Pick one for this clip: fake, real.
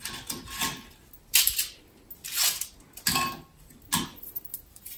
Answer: real